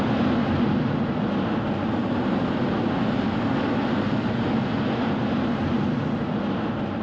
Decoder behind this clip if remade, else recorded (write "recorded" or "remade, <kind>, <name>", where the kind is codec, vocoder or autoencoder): recorded